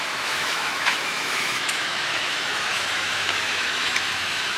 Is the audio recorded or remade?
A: remade